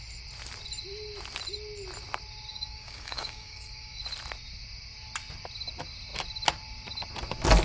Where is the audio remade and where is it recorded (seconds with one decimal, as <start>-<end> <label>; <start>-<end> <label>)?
0.0-2.5 recorded; 2.5-4.0 remade; 4.0-7.6 recorded